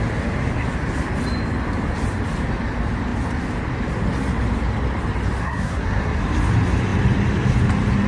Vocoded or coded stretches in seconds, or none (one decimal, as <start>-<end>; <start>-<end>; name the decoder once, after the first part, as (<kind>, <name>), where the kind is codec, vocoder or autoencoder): 5.4-6.2 (codec, SNAC)